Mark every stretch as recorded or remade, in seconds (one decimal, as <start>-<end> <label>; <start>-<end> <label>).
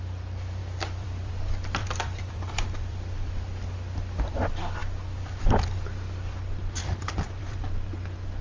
0.0-0.6 recorded; 0.6-1.3 remade; 1.3-1.8 recorded; 1.8-3.3 remade; 3.3-6.8 recorded; 6.8-7.9 remade; 7.9-8.4 recorded